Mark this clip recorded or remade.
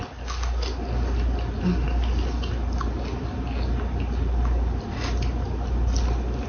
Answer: recorded